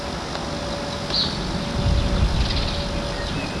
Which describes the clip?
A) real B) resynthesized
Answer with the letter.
A